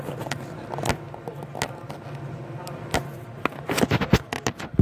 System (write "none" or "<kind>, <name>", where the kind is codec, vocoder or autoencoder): none